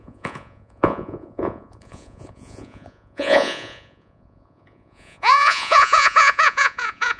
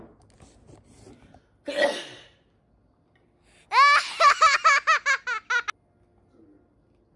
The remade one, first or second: first